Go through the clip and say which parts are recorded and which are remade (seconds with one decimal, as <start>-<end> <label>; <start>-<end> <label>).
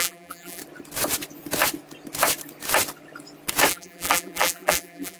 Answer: 0.0-0.6 remade; 0.6-3.7 recorded; 3.7-5.2 remade